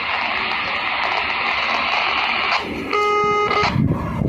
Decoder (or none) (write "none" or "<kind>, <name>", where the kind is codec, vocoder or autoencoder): none